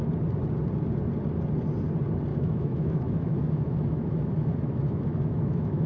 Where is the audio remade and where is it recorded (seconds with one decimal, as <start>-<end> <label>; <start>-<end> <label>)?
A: 0.0-2.3 recorded; 2.3-5.9 remade